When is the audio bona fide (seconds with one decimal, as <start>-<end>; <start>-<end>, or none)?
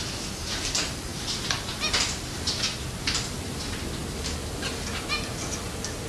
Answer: 0.0-6.1